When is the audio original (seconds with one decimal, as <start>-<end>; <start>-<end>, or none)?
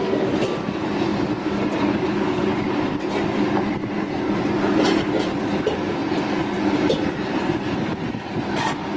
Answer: 0.0-9.0